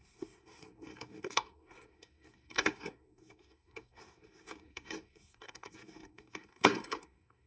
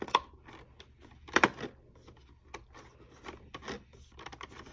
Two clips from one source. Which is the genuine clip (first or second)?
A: second